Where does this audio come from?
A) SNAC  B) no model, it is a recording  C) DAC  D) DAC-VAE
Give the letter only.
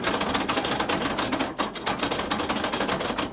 B